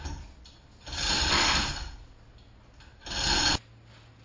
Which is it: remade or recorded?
recorded